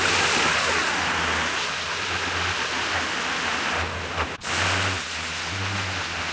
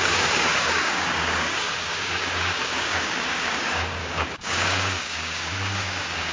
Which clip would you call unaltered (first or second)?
first